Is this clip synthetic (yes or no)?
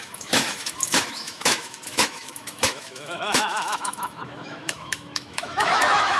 yes